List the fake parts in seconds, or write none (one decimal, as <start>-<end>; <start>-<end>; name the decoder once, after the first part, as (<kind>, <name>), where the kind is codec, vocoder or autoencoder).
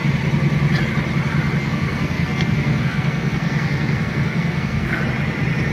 1.6-5.0 (codec, SNAC)